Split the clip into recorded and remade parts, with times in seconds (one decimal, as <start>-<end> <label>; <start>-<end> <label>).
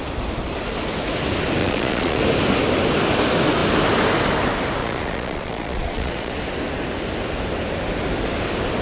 0.0-1.6 recorded; 1.6-2.2 remade; 2.2-4.8 recorded; 4.8-6.3 remade; 6.3-8.8 recorded